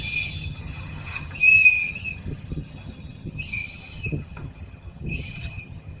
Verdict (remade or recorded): remade